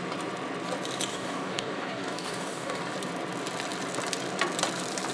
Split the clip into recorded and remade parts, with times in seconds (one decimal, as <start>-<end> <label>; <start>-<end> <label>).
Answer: 0.0-1.1 recorded; 1.1-2.8 remade; 2.8-5.1 recorded